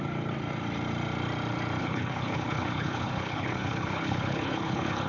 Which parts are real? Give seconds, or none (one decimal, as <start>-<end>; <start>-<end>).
0.0-1.8